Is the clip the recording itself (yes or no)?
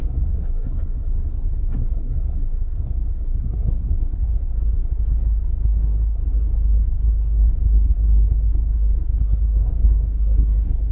no